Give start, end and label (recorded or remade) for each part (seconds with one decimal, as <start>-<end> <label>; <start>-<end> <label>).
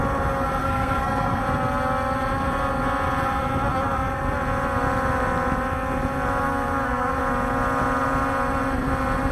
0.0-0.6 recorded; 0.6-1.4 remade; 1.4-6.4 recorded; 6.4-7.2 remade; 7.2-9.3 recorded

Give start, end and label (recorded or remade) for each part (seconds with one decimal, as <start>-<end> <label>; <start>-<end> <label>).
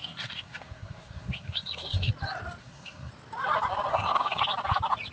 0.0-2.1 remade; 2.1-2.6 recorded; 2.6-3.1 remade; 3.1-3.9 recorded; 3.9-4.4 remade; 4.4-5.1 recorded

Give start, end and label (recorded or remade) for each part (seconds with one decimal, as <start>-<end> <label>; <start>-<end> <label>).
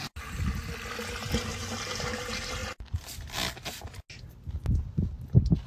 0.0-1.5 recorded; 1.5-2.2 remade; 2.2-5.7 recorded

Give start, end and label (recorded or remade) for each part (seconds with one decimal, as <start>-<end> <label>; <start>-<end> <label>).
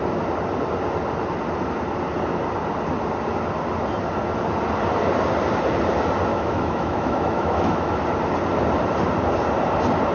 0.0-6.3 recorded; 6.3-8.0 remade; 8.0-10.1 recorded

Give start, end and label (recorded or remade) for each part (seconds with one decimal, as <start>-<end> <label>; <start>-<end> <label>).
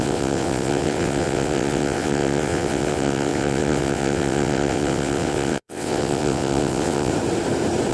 0.0-7.1 remade; 7.1-7.9 recorded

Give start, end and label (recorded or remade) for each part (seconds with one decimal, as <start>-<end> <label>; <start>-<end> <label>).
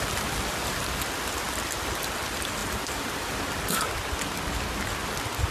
0.0-2.6 recorded; 2.6-3.4 remade; 3.4-5.5 recorded